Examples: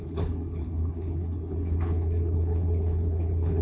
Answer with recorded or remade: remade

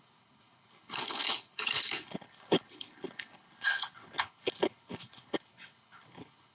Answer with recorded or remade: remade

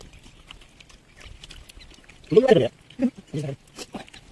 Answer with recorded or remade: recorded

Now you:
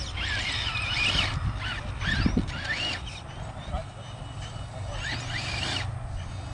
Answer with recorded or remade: recorded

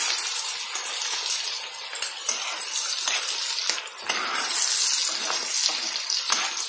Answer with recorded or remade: recorded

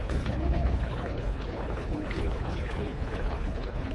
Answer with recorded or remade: remade